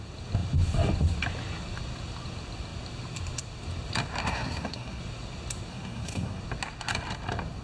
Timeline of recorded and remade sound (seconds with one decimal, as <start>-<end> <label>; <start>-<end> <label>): 0.0-4.2 recorded; 4.2-5.0 remade; 5.0-5.7 recorded; 5.7-6.4 remade; 6.4-7.6 recorded